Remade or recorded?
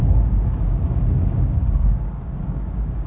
remade